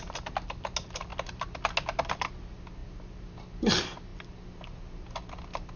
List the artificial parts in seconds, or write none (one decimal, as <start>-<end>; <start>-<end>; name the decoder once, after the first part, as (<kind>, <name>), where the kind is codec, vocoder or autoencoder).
none